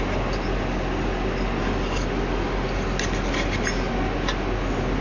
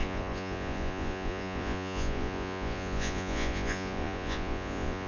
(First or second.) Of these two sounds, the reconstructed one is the second